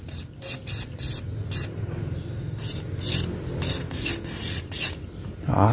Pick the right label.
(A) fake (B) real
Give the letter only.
B